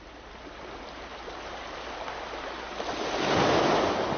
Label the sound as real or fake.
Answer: real